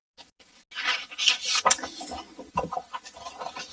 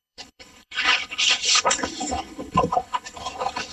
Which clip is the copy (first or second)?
second